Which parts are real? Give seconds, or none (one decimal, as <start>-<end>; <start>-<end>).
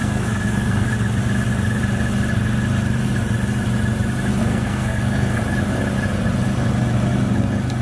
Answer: 0.9-4.3; 5.4-7.8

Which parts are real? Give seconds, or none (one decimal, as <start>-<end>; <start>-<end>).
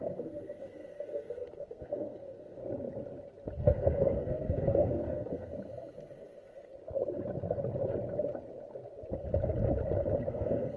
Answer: 2.6-3.6; 5.5-10.3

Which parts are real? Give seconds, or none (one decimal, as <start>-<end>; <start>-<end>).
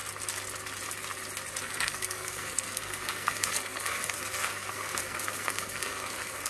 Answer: 0.0-1.6